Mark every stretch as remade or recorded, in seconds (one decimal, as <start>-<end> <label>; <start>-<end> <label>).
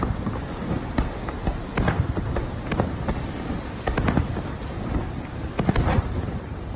0.0-6.8 recorded